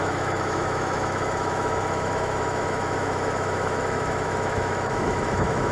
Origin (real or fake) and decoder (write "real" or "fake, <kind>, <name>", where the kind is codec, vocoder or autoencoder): fake, autoencoder, DAC-VAE